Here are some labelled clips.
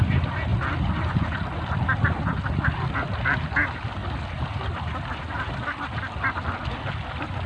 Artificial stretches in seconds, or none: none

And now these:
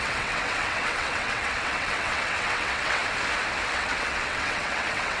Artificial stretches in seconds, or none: 0.0-3.0; 3.7-5.2